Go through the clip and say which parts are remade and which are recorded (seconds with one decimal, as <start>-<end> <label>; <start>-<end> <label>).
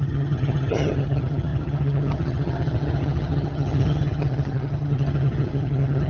0.0-6.1 remade